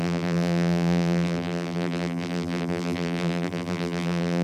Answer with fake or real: fake